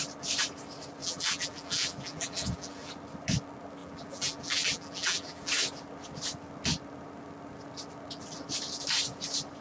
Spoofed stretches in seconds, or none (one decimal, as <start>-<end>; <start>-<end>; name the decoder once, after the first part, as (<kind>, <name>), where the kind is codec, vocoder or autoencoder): 1.0-2.9 (vocoder, BigVGAN v2); 3.8-5.5